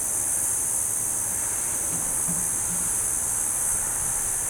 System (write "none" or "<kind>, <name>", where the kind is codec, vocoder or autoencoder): none